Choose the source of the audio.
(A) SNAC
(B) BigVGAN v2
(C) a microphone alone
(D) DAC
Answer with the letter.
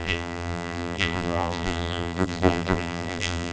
B